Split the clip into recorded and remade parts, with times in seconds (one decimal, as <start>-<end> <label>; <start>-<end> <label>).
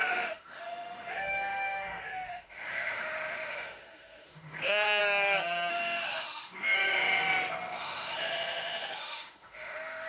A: 0.0-5.0 remade; 5.0-5.7 recorded; 5.7-10.1 remade